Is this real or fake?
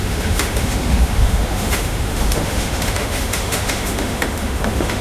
fake